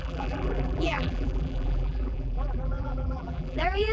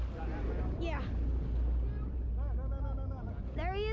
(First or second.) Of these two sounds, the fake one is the first